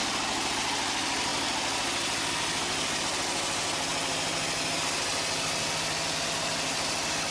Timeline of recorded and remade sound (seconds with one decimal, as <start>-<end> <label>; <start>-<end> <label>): 0.0-7.3 recorded